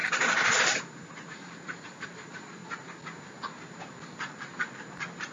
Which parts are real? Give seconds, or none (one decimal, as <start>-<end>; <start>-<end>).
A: 0.0-0.8; 2.6-5.3